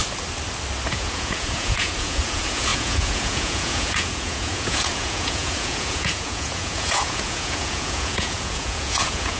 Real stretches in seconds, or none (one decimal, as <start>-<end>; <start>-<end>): 0.0-0.9